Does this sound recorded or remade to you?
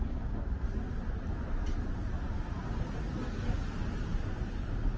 recorded